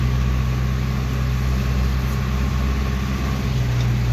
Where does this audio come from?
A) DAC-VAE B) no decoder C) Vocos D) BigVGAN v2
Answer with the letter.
B